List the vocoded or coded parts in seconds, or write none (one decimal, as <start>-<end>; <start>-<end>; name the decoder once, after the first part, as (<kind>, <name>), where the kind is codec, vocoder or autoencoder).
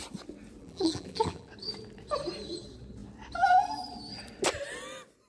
0.6-1.5 (vocoder, BigVGAN v2)